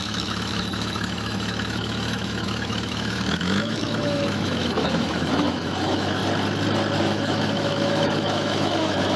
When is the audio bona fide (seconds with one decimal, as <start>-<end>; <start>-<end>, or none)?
6.2-7.0